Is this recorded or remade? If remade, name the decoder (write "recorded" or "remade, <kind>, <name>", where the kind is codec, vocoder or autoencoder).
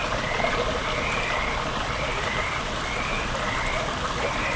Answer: remade, vocoder, BigVGAN v2